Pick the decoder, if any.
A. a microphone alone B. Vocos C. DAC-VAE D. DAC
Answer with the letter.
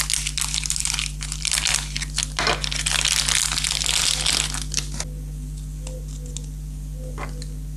A